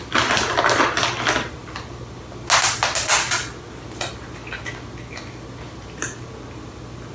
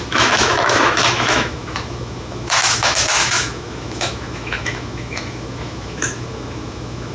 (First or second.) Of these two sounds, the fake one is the second